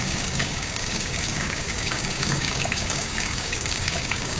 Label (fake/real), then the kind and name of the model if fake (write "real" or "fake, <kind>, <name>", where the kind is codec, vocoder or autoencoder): fake, codec, DAC